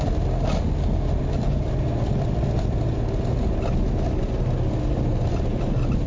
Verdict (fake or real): real